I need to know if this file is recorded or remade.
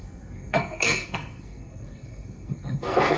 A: remade